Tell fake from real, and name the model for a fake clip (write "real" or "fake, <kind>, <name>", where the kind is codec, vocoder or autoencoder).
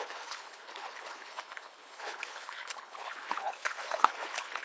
fake, codec, HILCodec